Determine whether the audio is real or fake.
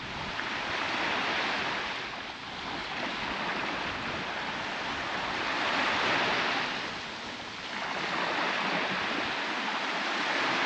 real